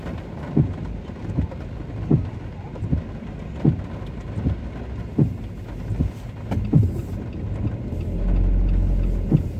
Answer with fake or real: real